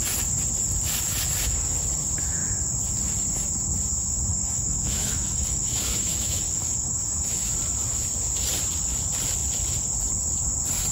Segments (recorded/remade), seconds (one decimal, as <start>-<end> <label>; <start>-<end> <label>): 0.0-4.3 recorded; 4.3-7.5 remade; 7.5-10.9 recorded